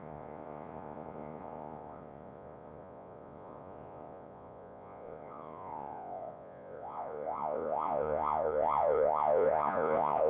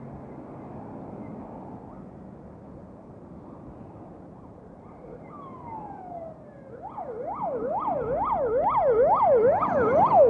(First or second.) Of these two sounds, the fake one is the first